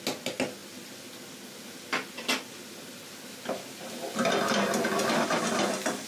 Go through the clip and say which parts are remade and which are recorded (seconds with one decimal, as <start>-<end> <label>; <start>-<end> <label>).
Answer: 0.0-6.1 recorded